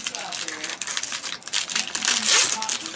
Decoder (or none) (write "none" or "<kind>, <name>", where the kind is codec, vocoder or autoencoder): none